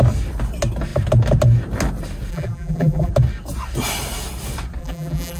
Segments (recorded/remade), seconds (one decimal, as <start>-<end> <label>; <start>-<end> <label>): 0.0-2.3 recorded; 2.3-3.1 remade; 3.1-4.8 recorded; 4.8-5.4 remade